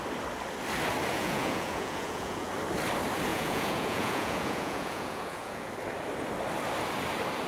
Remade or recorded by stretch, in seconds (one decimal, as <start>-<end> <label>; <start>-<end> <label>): 0.0-1.1 recorded; 1.1-2.5 remade; 2.5-3.3 recorded; 3.3-5.7 remade; 5.7-7.5 recorded